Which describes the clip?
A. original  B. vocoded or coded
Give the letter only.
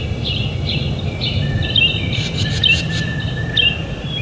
A